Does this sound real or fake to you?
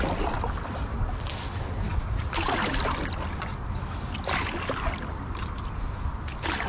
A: real